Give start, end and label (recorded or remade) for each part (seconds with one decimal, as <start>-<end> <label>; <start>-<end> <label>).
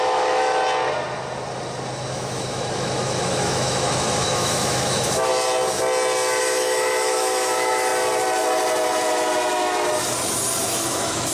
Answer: 0.0-0.5 remade; 0.5-2.1 recorded; 2.1-5.3 remade; 5.3-6.4 recorded; 6.4-7.9 remade; 7.9-10.6 recorded; 10.6-11.3 remade